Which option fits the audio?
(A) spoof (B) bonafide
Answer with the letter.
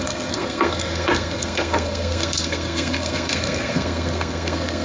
A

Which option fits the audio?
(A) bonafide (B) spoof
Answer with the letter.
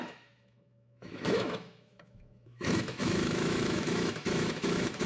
B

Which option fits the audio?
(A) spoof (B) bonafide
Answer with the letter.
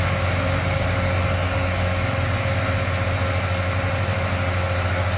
B